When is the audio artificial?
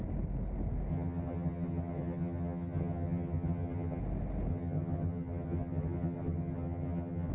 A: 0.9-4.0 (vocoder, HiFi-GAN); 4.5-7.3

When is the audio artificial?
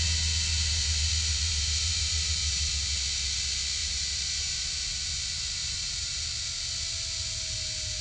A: 0.7-2.7 (vocoder, BigVGAN v2); 3.8-4.7; 5.6-6.4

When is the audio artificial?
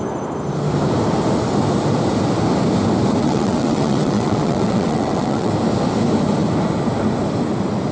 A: 3.2-5.5 (vocoder, WaveNeXt)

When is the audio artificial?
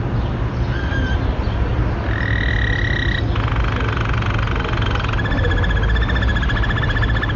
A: none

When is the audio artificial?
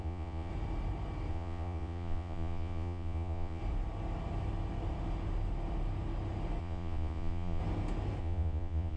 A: 0.0-0.5 (vocoder, Vocos); 1.3-3.6; 6.6-7.6; 8.2-9.0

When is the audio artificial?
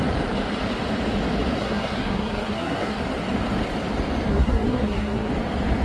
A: 1.6-3.0 (codec, SNAC); 4.3-5.3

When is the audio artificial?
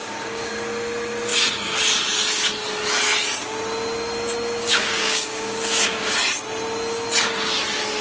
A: 0.0-0.5 (codec, DAC); 4.6-6.1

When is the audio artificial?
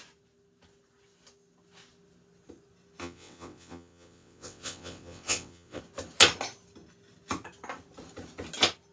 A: 3.0-5.8 (vocoder, WaveNeXt)